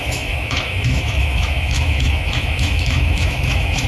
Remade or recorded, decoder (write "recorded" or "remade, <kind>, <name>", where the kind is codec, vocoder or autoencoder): remade, autoencoder, DAC-VAE